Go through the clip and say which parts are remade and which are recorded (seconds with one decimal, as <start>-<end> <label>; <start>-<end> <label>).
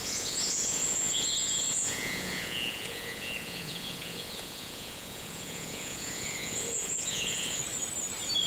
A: 0.0-7.6 remade; 7.6-8.5 recorded